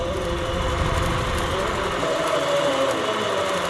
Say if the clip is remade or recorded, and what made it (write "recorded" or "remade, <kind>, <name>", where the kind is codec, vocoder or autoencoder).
recorded